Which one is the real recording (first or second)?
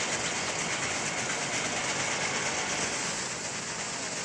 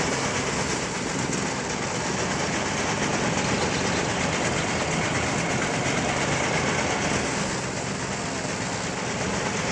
second